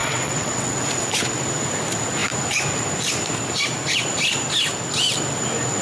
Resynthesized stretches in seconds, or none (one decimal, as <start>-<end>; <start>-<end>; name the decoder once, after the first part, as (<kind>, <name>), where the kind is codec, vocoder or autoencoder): 0.0-0.7 (vocoder, WaveNeXt)